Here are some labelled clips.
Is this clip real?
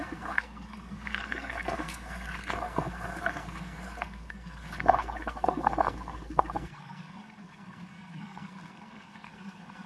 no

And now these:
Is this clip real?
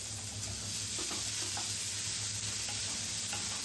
yes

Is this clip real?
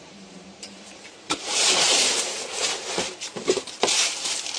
no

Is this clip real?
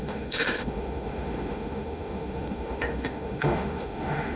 no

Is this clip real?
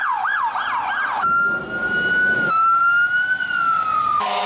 yes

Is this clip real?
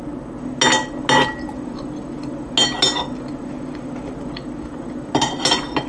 yes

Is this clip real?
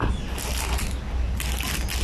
yes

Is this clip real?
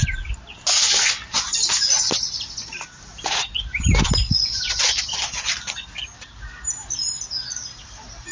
yes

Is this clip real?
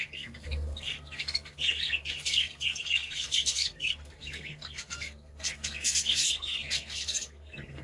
no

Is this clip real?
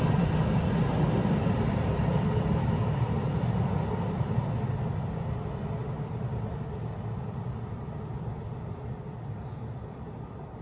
yes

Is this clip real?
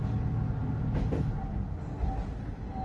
yes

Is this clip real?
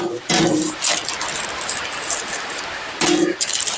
yes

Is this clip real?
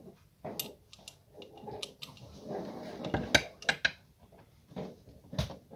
yes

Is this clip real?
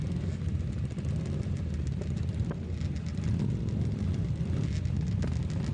yes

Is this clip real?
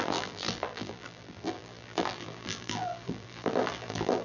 no